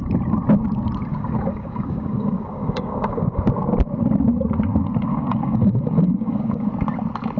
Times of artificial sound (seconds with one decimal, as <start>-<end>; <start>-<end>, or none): 1.1-3.4; 5.1-6.7